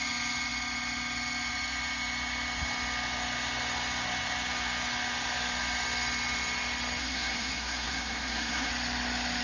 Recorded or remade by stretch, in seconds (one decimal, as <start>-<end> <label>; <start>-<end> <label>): 0.0-7.0 recorded; 7.0-8.7 remade; 8.7-9.4 recorded